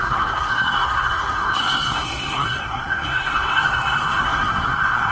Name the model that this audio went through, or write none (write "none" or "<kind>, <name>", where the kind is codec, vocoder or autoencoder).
codec, SNAC